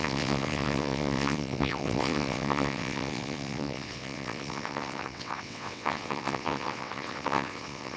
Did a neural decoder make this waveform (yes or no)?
yes